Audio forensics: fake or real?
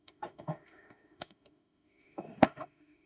fake